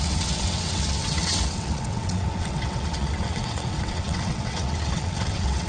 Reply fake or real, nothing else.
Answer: fake